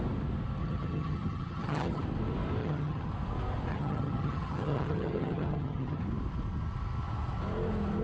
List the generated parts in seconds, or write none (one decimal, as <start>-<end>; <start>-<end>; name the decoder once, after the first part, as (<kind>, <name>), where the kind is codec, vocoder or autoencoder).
0.6-2.0 (vocoder, HiFi-GAN); 2.6-3.1; 3.7-6.0